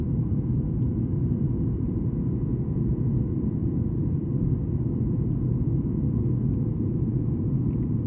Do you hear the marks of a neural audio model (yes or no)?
yes